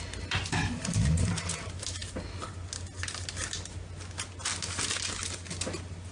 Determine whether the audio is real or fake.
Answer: real